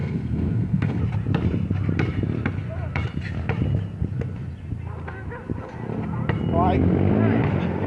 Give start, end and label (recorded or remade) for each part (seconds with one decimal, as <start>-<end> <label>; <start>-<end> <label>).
0.0-1.0 remade; 1.0-7.9 recorded